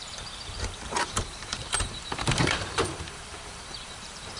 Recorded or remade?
remade